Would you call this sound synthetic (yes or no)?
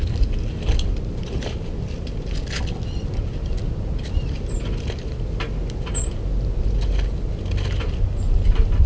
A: no